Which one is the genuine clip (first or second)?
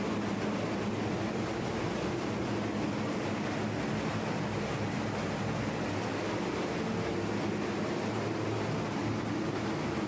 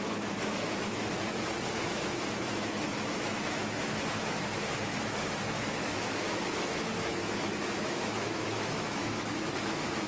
first